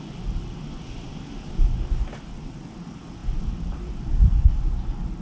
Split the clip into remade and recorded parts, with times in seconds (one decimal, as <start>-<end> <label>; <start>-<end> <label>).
0.0-5.2 recorded

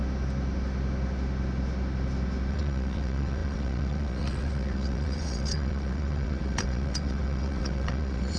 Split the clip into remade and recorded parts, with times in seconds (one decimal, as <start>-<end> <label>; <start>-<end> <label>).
0.0-2.5 recorded; 2.5-8.4 remade